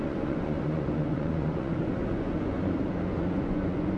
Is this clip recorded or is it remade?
remade